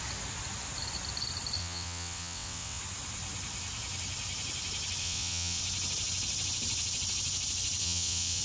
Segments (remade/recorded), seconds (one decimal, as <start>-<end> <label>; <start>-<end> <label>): 0.0-1.6 recorded; 1.6-2.8 remade; 2.8-5.0 recorded; 5.0-5.6 remade; 5.6-7.8 recorded; 7.8-8.4 remade